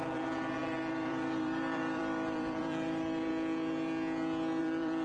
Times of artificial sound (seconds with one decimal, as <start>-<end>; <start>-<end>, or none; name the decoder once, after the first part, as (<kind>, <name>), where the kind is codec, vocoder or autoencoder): 0.0-3.3 (vocoder, BigVGAN v2); 4.6-5.0